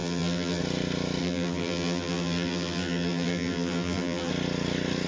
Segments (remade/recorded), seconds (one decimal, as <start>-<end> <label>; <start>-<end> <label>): 0.0-0.6 remade; 0.6-1.2 recorded; 1.2-4.3 remade; 4.3-5.1 recorded